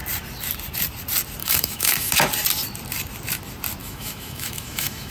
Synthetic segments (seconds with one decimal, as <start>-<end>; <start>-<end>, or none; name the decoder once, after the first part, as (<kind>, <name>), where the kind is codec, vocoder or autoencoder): 1.4-2.1 (autoencoder, DAC-VAE); 3.8-5.1